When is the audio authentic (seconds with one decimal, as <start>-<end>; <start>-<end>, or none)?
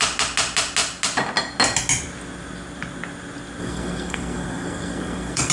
0.0-3.6